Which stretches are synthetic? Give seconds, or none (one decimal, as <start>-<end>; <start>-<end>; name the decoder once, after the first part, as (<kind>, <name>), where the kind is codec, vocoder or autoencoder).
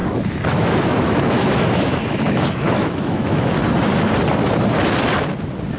0.0-3.5 (autoencoder, DAC-VAE)